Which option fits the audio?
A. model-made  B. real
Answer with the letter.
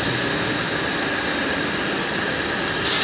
B